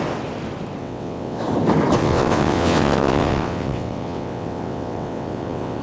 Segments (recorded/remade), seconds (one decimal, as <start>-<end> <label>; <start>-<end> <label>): 0.0-0.8 recorded; 0.8-1.4 remade; 1.4-2.0 recorded; 2.0-5.8 remade